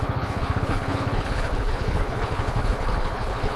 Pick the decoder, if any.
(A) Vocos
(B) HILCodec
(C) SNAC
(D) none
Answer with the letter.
B